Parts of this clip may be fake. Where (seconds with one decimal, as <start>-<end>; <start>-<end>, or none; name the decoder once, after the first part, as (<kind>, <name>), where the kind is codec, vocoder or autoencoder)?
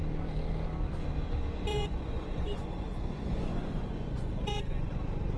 1.7-4.9 (vocoder, Vocos)